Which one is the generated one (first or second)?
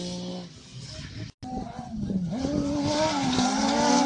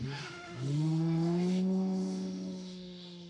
second